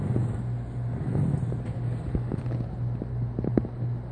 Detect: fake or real real